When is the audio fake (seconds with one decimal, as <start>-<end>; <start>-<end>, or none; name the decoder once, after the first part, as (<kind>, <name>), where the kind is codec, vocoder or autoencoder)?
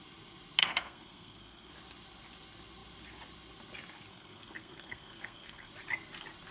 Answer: 0.6-1.7 (codec, SNAC); 4.1-5.7